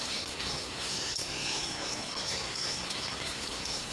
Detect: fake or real fake